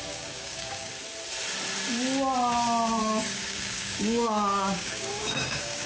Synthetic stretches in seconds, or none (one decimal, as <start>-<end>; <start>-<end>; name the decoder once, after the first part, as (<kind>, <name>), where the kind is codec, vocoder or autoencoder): 0.0-0.9 (codec, DAC); 3.0-5.9